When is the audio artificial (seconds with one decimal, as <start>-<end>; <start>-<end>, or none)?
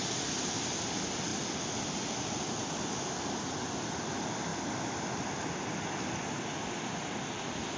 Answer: none